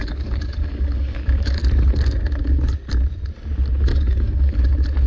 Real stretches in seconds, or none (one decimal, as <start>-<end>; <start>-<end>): 1.6-3.9; 4.6-5.1